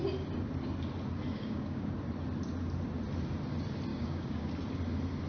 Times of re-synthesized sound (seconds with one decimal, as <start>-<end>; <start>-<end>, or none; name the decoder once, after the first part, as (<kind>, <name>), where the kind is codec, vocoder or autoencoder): 1.3-1.9 (codec, DAC); 3.9-4.5